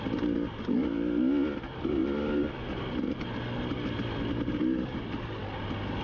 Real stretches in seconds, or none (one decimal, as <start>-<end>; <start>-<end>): 0.0-6.0